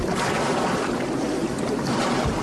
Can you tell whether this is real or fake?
real